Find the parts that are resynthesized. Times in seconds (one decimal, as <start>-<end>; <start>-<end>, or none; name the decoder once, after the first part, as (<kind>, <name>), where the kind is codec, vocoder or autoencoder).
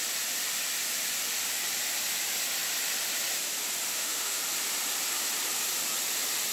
3.9-4.4 (autoencoder, DAC-VAE)